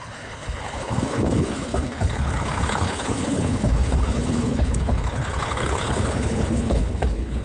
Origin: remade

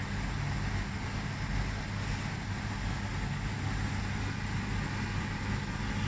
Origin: recorded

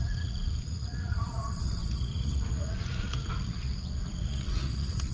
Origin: remade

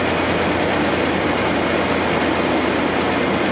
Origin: recorded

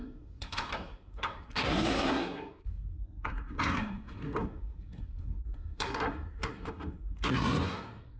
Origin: remade